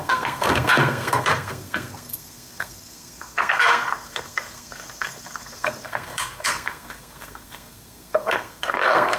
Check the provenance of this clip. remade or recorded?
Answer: remade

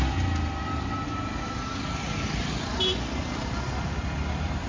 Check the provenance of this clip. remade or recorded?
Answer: recorded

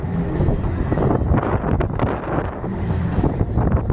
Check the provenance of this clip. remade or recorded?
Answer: recorded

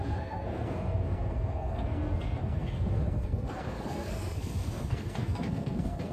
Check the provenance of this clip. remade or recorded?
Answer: remade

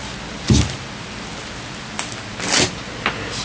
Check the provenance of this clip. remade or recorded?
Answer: recorded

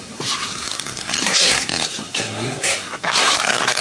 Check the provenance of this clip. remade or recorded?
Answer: remade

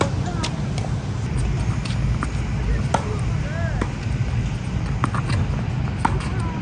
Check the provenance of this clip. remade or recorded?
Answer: recorded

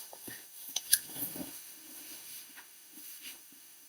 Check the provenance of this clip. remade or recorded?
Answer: remade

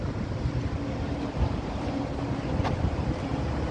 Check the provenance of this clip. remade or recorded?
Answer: recorded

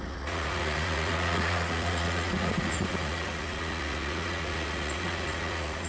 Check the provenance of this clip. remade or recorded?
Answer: remade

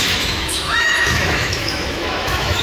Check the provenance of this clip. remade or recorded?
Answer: remade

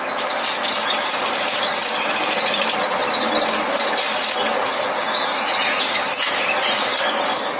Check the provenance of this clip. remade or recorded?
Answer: recorded